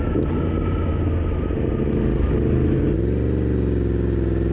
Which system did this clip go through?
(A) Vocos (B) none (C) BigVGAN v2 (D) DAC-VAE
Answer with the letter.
B